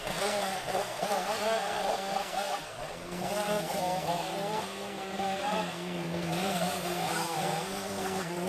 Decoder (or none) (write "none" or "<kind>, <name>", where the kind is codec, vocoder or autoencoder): codec, SNAC